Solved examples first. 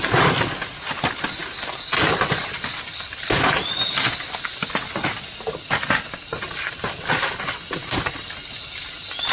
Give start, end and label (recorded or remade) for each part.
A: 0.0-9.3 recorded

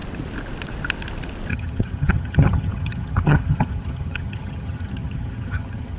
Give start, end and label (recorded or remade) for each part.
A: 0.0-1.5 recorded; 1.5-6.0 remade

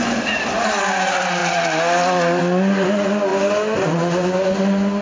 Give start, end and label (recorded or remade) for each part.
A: 0.0-5.0 recorded

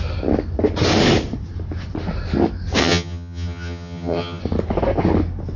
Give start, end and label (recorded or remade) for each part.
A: 0.0-2.8 recorded; 2.8-4.4 remade; 4.4-5.6 recorded